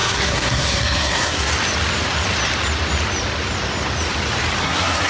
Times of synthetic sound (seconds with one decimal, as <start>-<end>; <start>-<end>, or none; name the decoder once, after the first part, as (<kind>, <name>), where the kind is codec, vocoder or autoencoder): 0.0-1.5 (codec, SNAC); 4.6-5.1